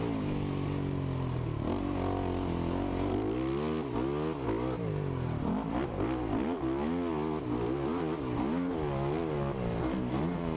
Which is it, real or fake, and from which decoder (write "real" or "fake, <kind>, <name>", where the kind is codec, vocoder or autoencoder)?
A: real